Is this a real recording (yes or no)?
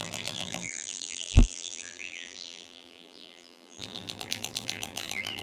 no